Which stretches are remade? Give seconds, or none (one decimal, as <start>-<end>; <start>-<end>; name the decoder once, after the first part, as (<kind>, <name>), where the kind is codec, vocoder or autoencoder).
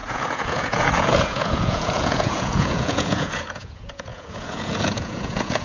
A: 0.0-5.6 (vocoder, Vocos)